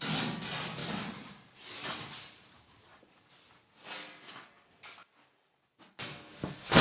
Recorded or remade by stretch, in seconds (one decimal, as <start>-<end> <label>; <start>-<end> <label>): 0.0-0.8 recorded; 0.8-3.3 remade; 3.3-6.8 recorded